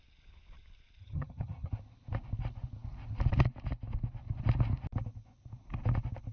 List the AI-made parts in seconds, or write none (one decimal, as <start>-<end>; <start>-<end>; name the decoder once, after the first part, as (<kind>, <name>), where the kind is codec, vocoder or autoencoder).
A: 1.0-1.7 (vocoder, HiFi-GAN)